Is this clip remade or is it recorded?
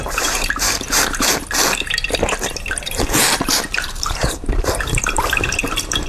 remade